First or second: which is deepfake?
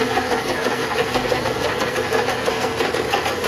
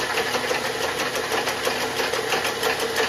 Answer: first